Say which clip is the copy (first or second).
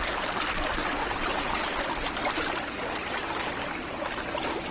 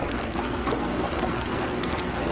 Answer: second